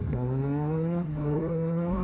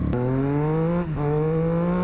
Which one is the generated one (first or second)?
first